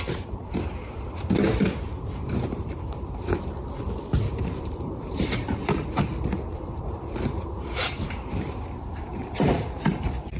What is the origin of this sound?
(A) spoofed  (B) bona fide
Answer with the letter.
A